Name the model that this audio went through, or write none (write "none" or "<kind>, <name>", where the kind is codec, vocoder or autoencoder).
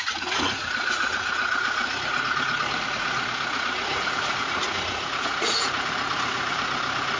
vocoder, Vocos